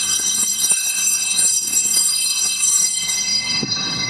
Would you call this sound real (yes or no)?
no